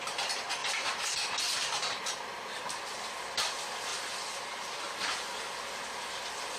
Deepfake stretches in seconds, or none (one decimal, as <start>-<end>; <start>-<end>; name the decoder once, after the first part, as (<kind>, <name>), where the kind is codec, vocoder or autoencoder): 0.6-2.8 (vocoder, BigVGAN v2); 3.9-4.9

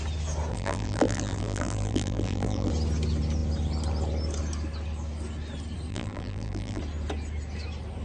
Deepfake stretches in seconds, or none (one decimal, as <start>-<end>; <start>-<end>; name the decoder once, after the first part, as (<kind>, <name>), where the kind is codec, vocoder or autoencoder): 0.5-2.7 (vocoder, BigVGAN v2); 5.9-6.8

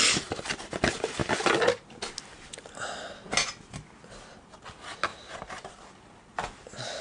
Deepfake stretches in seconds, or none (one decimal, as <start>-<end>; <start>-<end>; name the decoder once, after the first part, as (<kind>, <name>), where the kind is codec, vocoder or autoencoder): 5.1-5.7 (vocoder, BigVGAN v2)

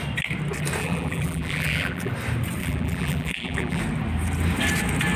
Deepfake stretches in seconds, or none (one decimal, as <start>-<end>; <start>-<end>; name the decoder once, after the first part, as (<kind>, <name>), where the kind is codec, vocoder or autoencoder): 0.8-2.1 (vocoder, BigVGAN v2); 2.6-3.8

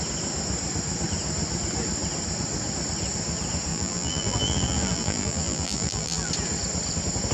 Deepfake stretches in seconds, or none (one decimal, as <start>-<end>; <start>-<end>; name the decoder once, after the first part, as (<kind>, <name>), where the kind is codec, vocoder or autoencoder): 3.7-6.3 (vocoder, BigVGAN v2)